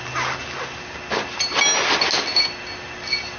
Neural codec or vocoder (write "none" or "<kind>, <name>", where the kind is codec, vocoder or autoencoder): none